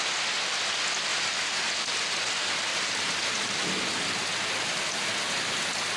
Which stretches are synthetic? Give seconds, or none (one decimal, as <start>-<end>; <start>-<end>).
1.1-1.7; 2.7-3.6